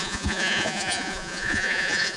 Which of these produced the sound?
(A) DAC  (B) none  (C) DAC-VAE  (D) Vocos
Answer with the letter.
D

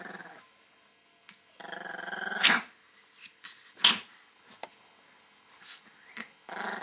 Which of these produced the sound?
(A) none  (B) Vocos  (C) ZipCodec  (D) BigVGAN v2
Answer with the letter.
A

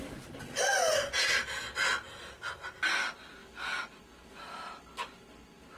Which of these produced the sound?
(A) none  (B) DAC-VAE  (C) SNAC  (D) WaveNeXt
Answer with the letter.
A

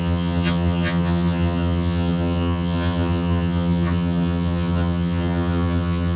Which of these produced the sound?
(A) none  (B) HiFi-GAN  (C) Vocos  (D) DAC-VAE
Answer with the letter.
B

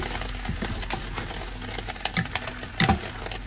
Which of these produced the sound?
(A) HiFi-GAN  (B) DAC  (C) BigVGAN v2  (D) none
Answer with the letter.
D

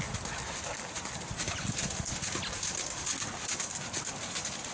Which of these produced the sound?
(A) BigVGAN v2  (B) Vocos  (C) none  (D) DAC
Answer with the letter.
C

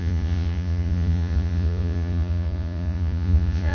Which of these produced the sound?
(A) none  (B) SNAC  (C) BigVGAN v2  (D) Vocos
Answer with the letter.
D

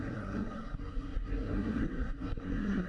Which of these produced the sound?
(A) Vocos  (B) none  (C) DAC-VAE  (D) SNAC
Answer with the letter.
D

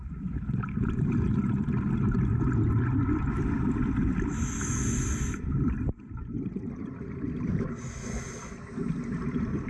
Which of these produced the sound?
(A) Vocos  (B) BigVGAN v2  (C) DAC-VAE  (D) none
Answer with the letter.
D